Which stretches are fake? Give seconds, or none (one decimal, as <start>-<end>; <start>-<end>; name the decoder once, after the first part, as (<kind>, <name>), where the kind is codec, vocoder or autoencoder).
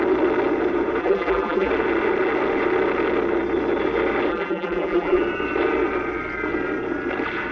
1.0-1.7 (vocoder, BigVGAN v2); 4.3-5.2